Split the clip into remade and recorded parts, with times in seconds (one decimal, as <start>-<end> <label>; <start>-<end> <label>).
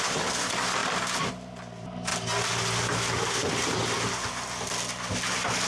0.0-5.7 recorded